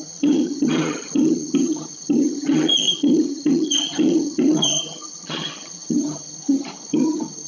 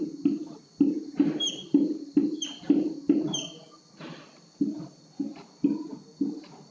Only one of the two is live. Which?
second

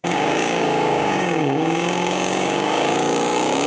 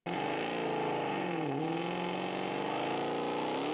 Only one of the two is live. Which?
second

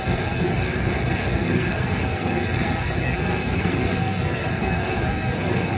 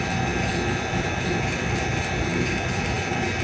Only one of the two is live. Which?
second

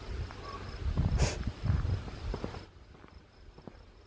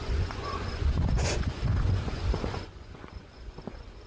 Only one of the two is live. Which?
first